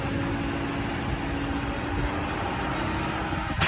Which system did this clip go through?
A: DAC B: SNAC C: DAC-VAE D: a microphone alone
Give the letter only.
D